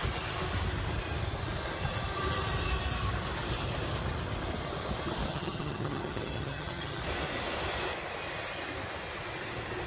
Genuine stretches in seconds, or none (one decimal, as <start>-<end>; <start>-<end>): 0.0-5.3; 7.0-9.9